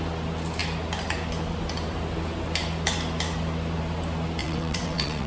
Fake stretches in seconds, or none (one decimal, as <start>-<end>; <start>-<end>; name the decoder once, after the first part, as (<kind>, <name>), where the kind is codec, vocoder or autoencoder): 4.4-5.3 (vocoder, WaveNeXt)